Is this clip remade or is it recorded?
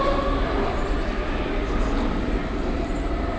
recorded